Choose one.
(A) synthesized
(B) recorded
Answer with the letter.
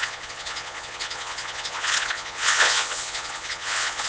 A